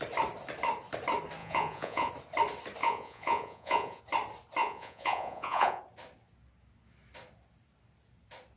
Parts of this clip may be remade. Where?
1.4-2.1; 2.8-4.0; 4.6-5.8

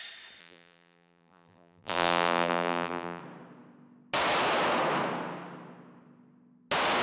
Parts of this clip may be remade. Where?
0.4-3.2

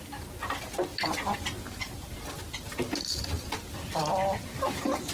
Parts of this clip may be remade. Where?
none

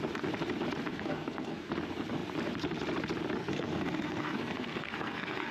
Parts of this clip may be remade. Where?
0.9-1.7; 3.4-5.5

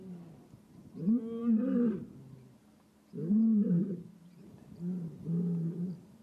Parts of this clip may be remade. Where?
none